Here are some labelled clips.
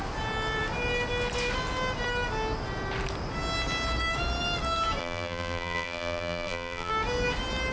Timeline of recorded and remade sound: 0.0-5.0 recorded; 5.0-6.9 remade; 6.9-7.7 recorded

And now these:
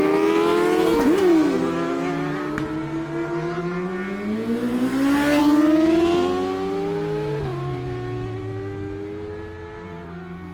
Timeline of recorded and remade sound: 0.0-10.5 recorded

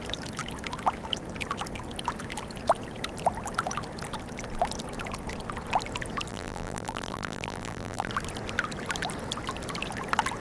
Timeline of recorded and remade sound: 0.0-6.3 recorded; 6.3-8.1 remade; 8.1-10.4 recorded

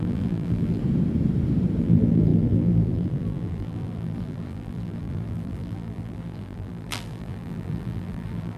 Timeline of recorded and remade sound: 0.0-0.8 remade; 0.8-1.8 recorded; 1.8-8.6 remade

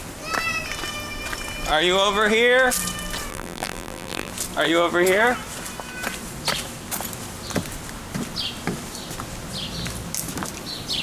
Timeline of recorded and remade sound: 0.0-3.3 recorded; 3.3-4.3 remade; 4.3-11.0 recorded

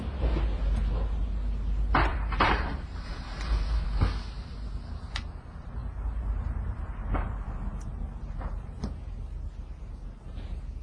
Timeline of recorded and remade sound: 0.0-2.1 recorded; 2.1-4.0 remade; 4.0-5.8 recorded; 5.8-9.1 remade; 9.1-10.8 recorded

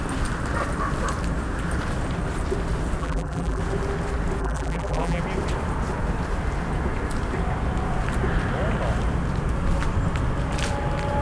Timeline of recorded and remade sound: 0.0-3.0 recorded; 3.0-3.6 remade; 3.6-4.4 recorded; 4.4-5.2 remade; 5.2-11.2 recorded

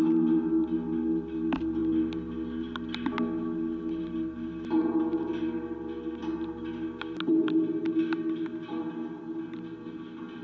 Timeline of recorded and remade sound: 0.0-10.4 recorded